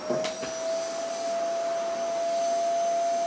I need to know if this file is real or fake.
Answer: real